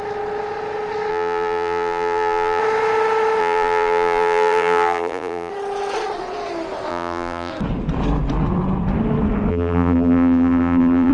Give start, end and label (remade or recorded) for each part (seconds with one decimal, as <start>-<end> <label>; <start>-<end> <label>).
0.0-1.1 recorded; 1.1-2.6 remade; 2.6-3.4 recorded; 3.4-5.5 remade; 5.5-6.9 recorded; 6.9-7.5 remade; 7.5-9.5 recorded; 9.5-11.1 remade